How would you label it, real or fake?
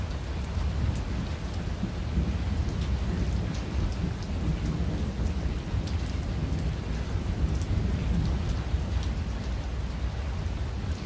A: real